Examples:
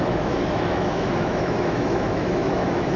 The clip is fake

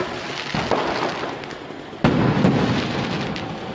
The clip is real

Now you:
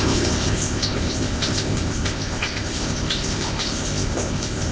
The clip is fake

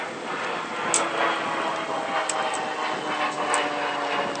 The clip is real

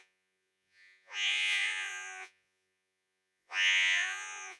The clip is fake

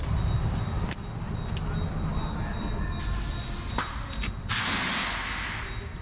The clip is real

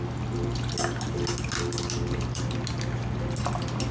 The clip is real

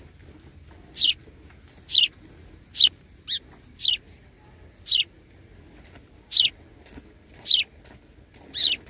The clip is real